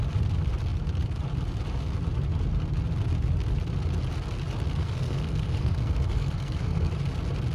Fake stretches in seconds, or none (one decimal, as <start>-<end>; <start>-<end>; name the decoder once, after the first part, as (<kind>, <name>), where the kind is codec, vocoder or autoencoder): 4.8-6.9 (codec, SNAC)